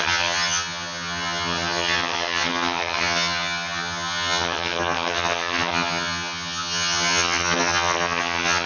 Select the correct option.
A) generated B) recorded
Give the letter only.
A